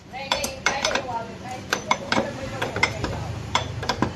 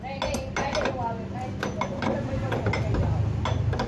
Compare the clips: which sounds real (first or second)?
second